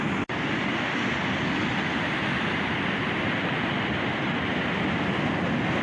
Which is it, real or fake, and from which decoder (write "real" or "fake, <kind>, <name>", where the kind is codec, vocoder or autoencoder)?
real